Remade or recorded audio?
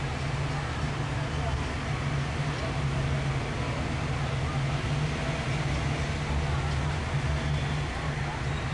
recorded